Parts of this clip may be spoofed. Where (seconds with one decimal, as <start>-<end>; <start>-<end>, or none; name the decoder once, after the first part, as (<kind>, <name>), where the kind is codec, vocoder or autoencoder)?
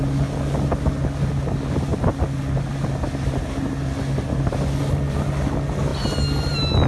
none